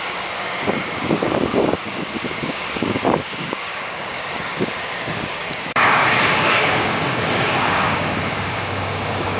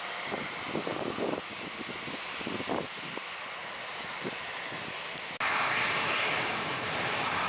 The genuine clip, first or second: second